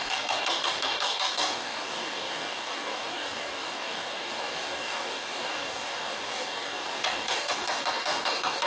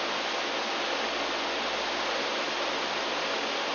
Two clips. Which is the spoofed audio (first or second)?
first